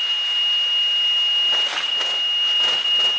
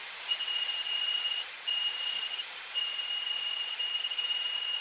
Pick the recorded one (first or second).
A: first